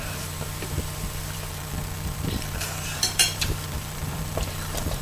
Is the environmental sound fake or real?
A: fake